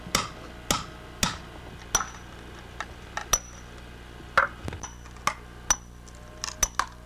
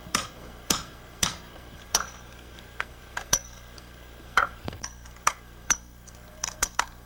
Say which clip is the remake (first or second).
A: second